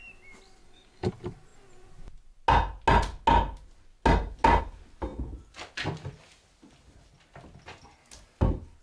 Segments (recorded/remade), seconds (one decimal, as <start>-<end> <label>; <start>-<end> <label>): 0.0-0.6 recorded; 0.6-1.1 remade; 1.1-8.8 recorded